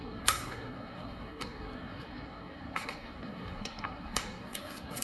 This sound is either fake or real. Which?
fake